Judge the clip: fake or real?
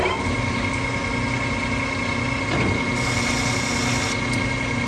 real